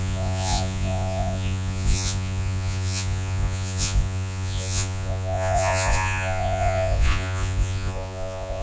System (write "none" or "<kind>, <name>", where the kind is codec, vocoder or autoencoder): vocoder, Vocos